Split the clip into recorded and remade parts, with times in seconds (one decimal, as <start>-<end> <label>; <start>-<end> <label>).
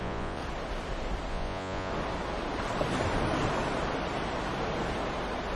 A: 0.0-0.4 remade; 0.4-1.3 recorded; 1.3-1.9 remade; 1.9-5.6 recorded